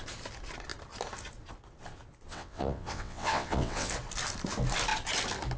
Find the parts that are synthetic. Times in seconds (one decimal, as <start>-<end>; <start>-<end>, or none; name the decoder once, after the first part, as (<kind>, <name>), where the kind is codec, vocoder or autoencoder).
2.3-3.9 (vocoder, WaveNeXt)